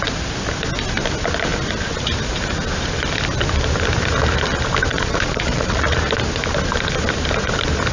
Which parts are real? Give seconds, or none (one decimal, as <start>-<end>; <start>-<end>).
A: 0.0-4.9; 6.0-7.9